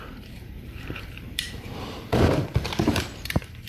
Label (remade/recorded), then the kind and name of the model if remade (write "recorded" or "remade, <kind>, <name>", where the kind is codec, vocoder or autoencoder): remade, vocoder, BigVGAN v2